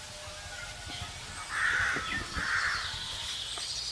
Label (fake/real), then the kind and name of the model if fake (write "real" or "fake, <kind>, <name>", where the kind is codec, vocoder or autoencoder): real